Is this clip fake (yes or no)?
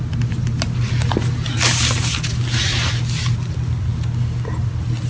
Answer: no